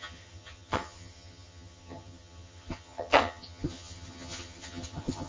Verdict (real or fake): fake